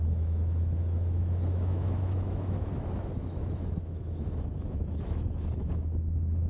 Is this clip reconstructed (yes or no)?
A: yes